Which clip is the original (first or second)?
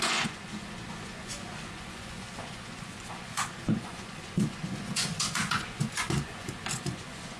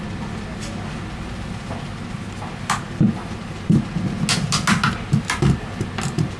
second